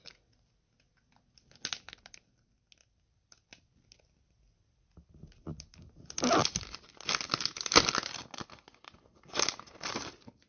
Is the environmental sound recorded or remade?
recorded